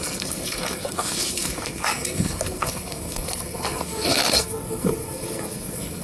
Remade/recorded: remade